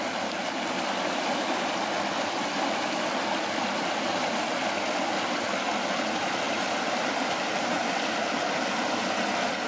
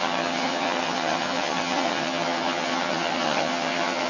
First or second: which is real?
first